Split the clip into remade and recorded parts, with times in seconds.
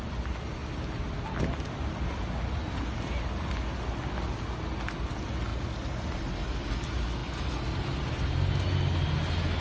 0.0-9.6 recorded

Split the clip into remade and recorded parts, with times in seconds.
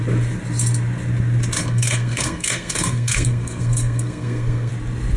0.0-1.6 recorded; 1.6-4.7 remade; 4.7-5.2 recorded